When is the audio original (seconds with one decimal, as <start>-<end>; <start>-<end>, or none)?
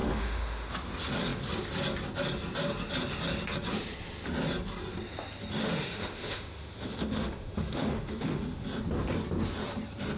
0.7-5.6; 8.6-10.2